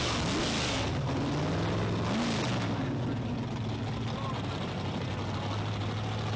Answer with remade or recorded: recorded